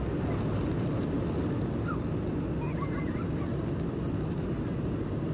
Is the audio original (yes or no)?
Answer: yes